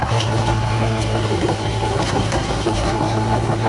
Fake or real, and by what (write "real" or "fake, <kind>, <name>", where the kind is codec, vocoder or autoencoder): fake, codec, SNAC